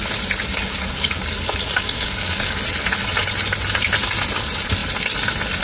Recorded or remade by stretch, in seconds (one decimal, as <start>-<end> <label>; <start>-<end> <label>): 0.0-0.5 recorded; 0.5-2.6 remade; 2.6-5.6 recorded